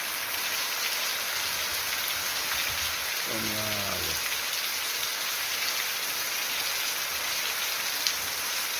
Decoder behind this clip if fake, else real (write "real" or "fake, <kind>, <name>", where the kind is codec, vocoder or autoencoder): real